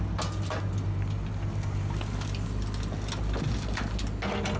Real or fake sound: real